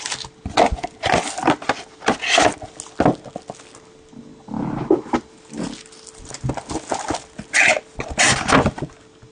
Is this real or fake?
real